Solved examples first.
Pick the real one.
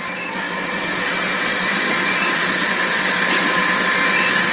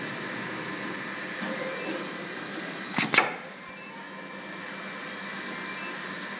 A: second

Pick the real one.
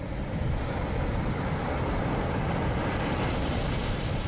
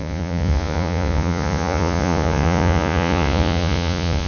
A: first